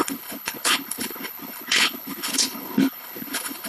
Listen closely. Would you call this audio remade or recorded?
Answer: remade